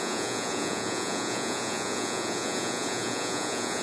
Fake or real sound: fake